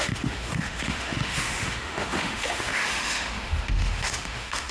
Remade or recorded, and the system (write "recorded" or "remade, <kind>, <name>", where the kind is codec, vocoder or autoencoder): remade, autoencoder, DAC-VAE